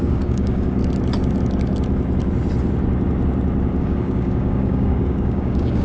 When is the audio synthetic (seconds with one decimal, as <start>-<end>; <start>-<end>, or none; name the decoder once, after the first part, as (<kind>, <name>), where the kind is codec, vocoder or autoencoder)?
0.0-0.8 (codec, DAC); 3.8-5.8